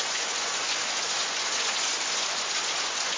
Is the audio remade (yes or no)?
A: yes